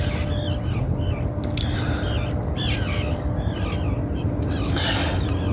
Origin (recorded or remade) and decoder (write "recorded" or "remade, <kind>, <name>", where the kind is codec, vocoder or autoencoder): recorded